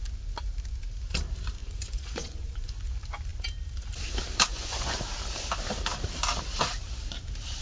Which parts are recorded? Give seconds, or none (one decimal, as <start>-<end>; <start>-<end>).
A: 0.0-1.6; 2.9-4.5; 5.0-7.6